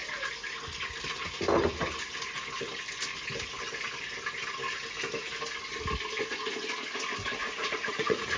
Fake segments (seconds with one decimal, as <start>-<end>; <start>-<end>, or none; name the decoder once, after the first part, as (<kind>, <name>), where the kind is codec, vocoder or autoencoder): 7.4-8.4 (vocoder, Vocos)